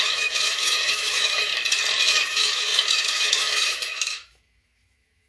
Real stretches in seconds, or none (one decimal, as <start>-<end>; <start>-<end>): 1.5-2.1